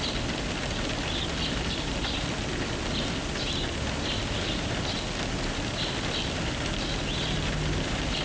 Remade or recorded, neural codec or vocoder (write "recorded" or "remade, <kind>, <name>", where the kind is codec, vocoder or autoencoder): recorded